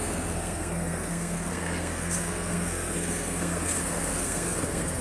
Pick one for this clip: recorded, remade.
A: remade